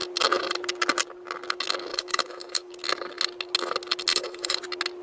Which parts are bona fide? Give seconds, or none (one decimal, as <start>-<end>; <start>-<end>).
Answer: 0.0-1.9; 2.7-4.1; 4.6-5.0